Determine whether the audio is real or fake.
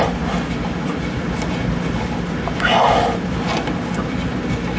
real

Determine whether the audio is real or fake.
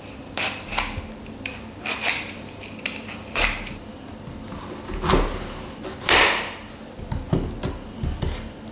real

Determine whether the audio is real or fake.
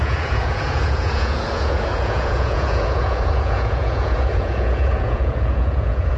fake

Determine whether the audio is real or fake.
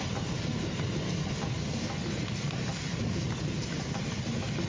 real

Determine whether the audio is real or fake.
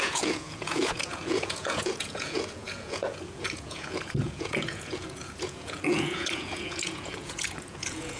fake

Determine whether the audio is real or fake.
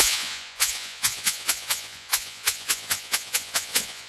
fake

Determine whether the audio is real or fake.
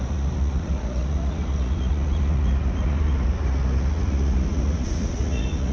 fake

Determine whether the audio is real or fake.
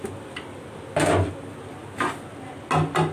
real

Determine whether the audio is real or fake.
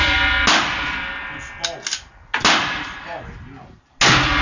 real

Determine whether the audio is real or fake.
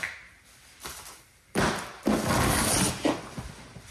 real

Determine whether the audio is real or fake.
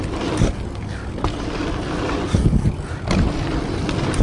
real